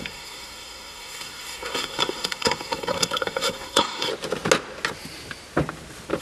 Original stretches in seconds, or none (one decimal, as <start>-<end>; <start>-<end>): 4.1-6.2